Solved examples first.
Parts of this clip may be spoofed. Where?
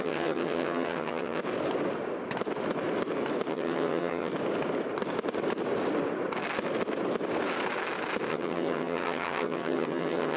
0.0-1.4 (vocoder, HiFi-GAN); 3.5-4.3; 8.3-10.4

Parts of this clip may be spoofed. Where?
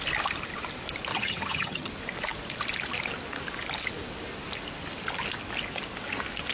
1.1-1.9 (vocoder, HiFi-GAN)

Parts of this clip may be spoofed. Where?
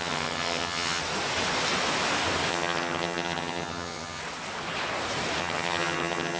0.0-1.0 (vocoder, HiFi-GAN); 2.5-4.2; 5.4-6.4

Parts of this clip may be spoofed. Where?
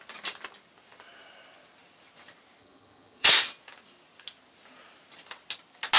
2.6-3.3 (vocoder, HiFi-GAN)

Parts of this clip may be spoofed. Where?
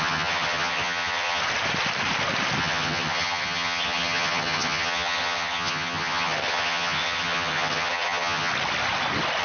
0.0-1.4 (vocoder, HiFi-GAN); 2.6-8.5